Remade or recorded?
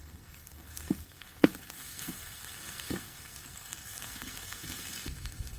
remade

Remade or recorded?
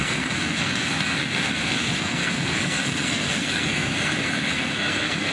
remade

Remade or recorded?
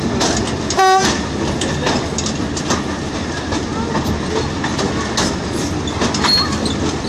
recorded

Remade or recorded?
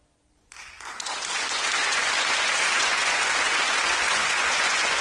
remade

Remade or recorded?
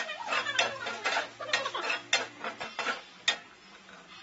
recorded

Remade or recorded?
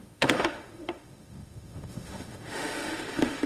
remade